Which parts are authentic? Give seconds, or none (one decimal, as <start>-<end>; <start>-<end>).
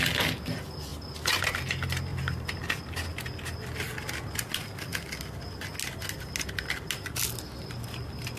0.0-2.1; 2.6-8.4